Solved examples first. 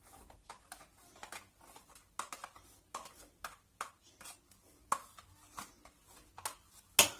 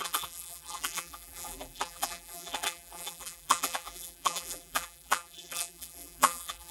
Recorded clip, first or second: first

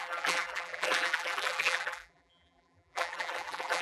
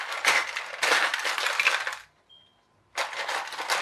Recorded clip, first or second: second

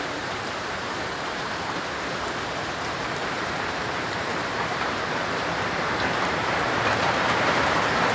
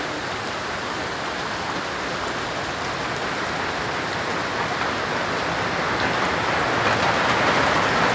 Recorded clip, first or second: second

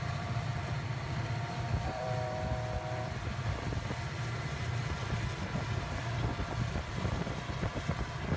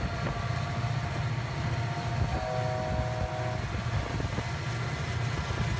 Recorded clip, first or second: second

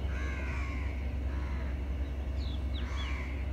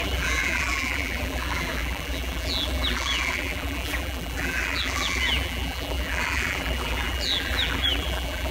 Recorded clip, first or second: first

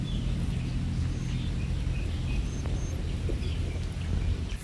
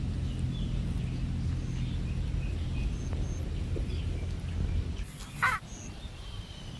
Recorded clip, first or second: second